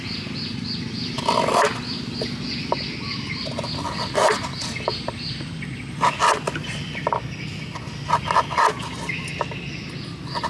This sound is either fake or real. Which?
real